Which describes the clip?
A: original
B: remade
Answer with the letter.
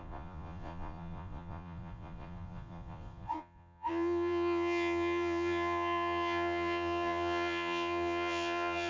B